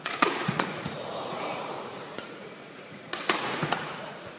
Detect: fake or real fake